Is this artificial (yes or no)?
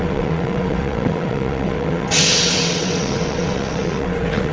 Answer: yes